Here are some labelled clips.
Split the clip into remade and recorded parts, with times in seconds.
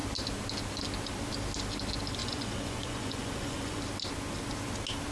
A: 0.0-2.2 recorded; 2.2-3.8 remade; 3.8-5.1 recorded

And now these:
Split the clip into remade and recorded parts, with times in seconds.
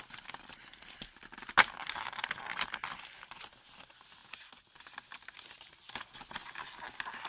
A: 0.0-7.3 recorded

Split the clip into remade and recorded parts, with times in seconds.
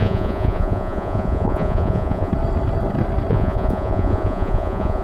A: 0.0-2.3 remade; 2.3-3.3 recorded; 3.3-5.0 remade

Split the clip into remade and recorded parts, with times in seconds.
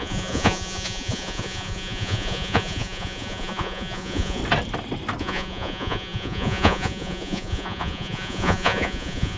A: 0.0-4.4 remade; 4.4-5.2 recorded; 5.2-9.4 remade